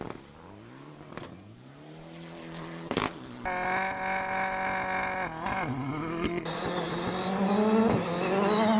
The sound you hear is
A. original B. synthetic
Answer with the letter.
A